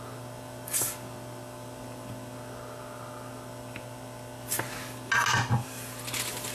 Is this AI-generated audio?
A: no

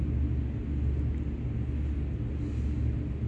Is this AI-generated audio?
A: no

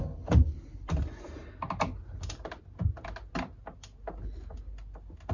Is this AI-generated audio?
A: no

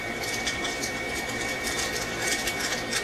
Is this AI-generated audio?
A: yes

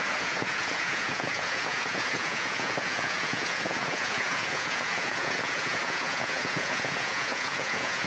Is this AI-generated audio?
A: yes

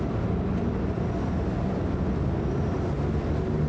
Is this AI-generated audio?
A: no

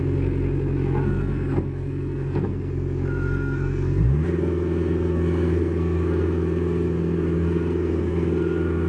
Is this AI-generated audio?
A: yes